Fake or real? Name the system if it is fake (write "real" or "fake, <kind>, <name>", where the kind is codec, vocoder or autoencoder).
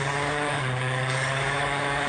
fake, codec, DAC